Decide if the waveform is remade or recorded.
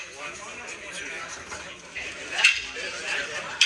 recorded